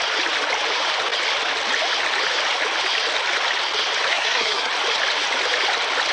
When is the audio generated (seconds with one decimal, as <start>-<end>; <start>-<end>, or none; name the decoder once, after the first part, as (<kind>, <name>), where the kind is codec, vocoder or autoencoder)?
4.1-4.7 (codec, SNAC)